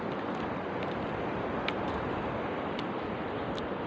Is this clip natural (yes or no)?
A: yes